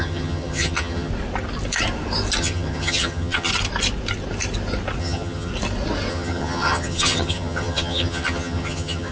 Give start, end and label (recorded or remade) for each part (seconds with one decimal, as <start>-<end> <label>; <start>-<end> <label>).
0.0-1.1 remade; 1.1-2.4 recorded; 2.4-3.5 remade; 3.5-5.0 recorded; 5.0-5.5 remade; 5.5-6.1 recorded; 6.1-9.1 remade